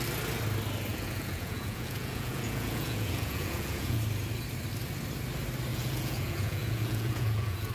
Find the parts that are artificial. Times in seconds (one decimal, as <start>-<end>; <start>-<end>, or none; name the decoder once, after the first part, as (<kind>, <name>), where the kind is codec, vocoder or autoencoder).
0.9-4.0 (vocoder, Vocos); 5.7-7.7

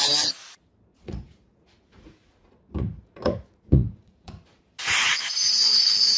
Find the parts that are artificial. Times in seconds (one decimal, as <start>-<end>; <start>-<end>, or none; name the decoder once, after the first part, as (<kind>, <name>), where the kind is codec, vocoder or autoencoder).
0.9-4.6 (vocoder, Vocos)